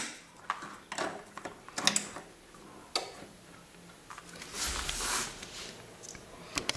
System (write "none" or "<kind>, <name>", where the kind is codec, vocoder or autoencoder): none